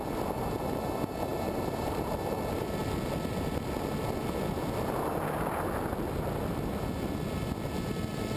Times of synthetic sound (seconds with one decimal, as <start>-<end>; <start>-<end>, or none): 1.3-2.1

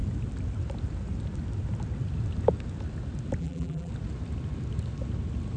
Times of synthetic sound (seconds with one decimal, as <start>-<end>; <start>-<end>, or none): 3.4-3.9

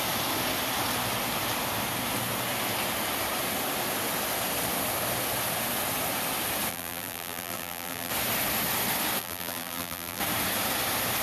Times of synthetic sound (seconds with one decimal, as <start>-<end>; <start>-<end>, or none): 6.7-8.1; 9.2-10.2

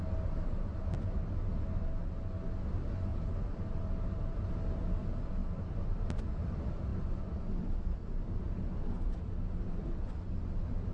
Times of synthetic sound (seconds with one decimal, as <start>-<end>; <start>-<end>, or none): 3.1-4.5; 5.4-6.5

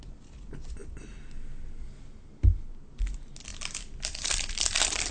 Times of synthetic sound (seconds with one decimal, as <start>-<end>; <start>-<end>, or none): 3.5-5.1

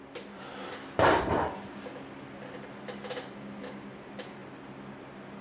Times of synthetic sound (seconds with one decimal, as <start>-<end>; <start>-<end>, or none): 0.6-1.8

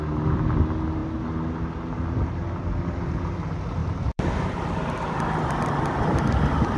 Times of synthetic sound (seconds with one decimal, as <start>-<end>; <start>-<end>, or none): 3.8-4.5